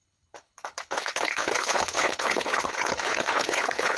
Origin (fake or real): fake